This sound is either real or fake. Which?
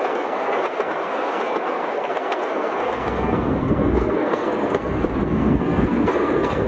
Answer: fake